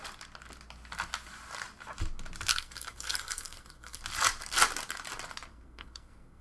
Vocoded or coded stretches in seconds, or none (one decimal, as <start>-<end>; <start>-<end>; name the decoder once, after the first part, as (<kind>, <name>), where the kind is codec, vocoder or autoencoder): 2.5-4.0 (codec, SNAC); 5.5-6.4